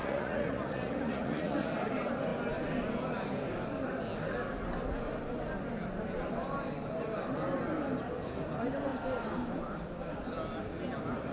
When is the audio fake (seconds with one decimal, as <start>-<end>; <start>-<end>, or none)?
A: 0.0-1.7